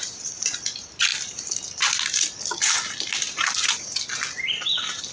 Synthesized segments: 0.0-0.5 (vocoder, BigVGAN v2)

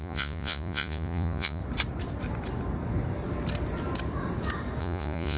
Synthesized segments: 0.0-1.6 (vocoder, Vocos); 4.8-5.4

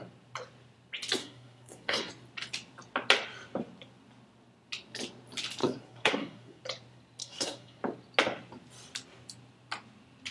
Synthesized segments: 1.2-2.1 (codec, SNAC); 5.6-6.6; 7.2-7.8

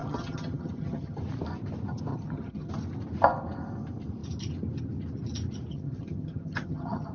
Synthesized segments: 0.0-1.2 (vocoder, HiFi-GAN); 2.1-2.7; 5.7-7.1

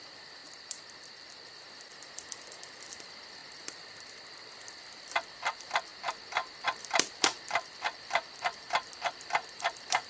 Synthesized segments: 0.0-0.4 (vocoder, BigVGAN v2); 1.9-3.4; 4.8-5.9; 6.8-10.1

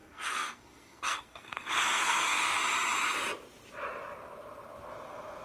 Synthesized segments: 0.0-2.6 (codec, SNAC)